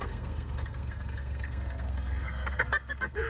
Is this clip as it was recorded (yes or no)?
no